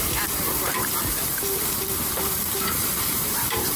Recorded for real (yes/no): no